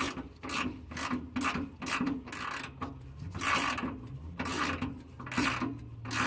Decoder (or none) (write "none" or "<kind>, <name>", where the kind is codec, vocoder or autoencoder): none